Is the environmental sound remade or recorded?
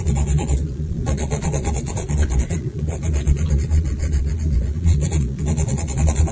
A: remade